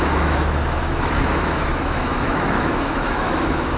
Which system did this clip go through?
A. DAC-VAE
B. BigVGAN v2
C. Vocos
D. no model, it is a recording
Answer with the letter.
A